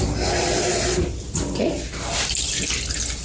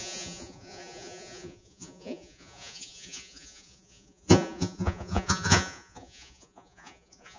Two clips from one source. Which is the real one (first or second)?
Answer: first